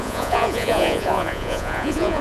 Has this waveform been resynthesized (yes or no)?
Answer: yes